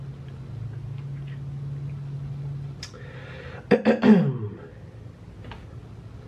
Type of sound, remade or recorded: recorded